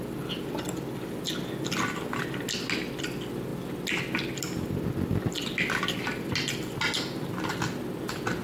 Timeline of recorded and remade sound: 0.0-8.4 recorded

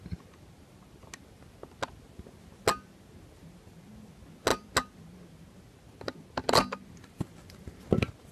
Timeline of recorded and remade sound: 0.0-8.3 recorded

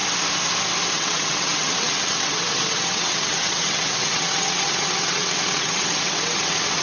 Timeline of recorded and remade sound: 0.0-0.9 recorded; 0.9-6.8 remade